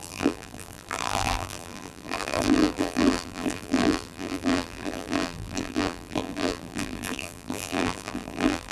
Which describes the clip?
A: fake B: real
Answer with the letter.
A